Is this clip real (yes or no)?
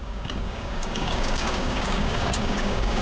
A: no